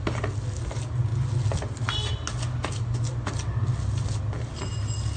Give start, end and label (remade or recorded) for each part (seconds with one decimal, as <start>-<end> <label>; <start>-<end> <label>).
0.0-5.2 recorded